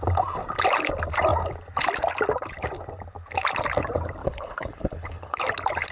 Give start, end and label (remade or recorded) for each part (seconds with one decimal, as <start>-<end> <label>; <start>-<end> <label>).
0.0-4.2 recorded; 4.2-5.4 remade; 5.4-5.9 recorded